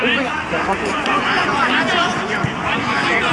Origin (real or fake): fake